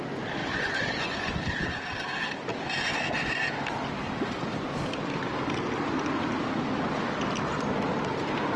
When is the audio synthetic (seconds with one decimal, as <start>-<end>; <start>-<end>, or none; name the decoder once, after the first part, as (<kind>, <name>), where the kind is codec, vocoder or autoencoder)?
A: 0.4-1.4 (vocoder, Vocos)